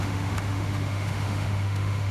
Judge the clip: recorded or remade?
remade